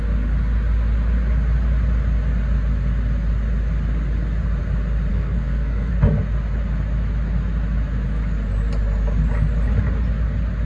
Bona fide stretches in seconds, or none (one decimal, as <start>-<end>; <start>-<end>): 0.0-5.1; 5.9-10.7